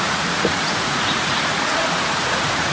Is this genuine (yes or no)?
no